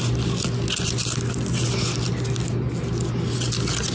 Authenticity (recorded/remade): recorded